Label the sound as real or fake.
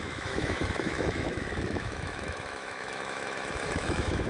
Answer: fake